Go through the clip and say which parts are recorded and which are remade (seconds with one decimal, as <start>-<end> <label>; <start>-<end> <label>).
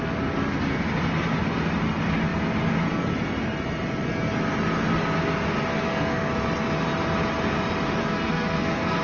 0.0-5.7 recorded; 5.7-6.3 remade; 6.3-8.0 recorded; 8.0-9.0 remade